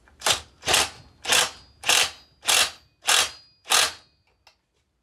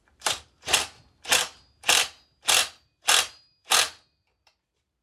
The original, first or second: first